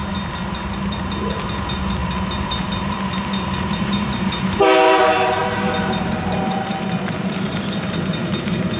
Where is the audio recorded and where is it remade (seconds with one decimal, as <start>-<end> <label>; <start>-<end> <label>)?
0.0-0.7 recorded; 0.7-8.8 remade